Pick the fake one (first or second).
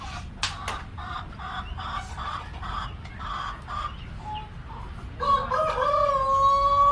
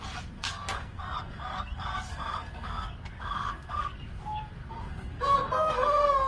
second